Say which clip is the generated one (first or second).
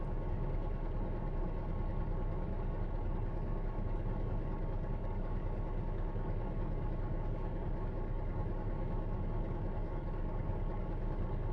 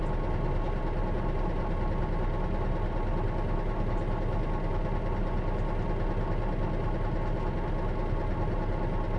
first